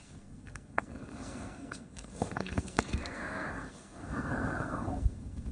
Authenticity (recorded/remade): remade